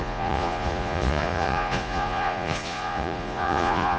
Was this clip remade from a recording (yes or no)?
yes